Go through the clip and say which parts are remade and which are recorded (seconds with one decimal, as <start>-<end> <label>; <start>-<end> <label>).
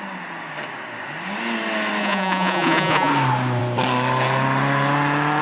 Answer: 0.0-2.0 recorded; 2.0-3.1 remade; 3.1-5.4 recorded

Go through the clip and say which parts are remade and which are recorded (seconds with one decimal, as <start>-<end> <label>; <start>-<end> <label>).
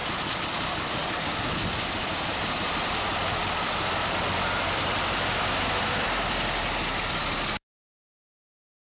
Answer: 0.0-9.0 recorded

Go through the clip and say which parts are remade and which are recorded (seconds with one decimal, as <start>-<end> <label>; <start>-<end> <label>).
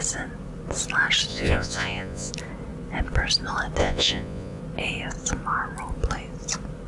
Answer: 0.0-1.3 recorded; 1.3-2.3 remade; 2.3-3.8 recorded; 3.8-4.6 remade; 4.6-6.9 recorded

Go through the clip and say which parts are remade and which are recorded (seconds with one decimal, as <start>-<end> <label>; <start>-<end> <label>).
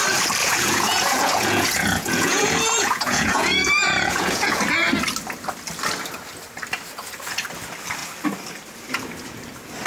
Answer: 0.0-0.4 recorded; 0.4-4.6 remade; 4.6-9.9 recorded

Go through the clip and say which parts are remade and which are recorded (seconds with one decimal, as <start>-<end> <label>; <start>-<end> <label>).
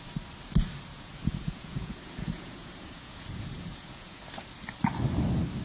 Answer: 0.0-0.9 recorded; 0.9-4.3 remade; 4.3-5.6 recorded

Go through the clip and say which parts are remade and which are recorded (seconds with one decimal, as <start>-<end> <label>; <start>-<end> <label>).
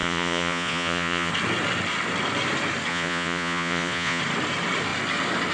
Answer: 0.0-1.3 remade; 1.3-2.9 recorded; 2.9-4.2 remade; 4.2-5.5 recorded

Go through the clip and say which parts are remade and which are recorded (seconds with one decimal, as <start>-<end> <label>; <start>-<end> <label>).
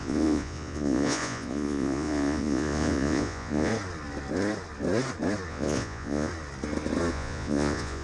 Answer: 0.0-3.7 remade; 3.7-5.5 recorded; 5.5-6.3 remade; 6.3-7.1 recorded; 7.1-8.0 remade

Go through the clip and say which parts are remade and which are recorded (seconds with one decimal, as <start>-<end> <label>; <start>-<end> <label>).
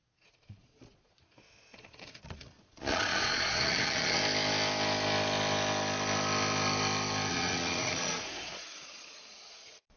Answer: 0.0-4.2 remade; 4.2-7.3 recorded; 7.3-10.0 remade